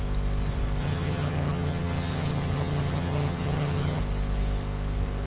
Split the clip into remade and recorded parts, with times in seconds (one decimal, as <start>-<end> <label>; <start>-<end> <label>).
0.0-0.8 recorded; 0.8-4.0 remade; 4.0-5.3 recorded